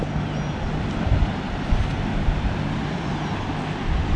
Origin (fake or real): real